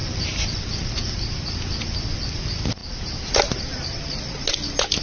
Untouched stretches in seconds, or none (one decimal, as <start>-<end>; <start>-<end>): 0.9-2.8; 3.6-5.0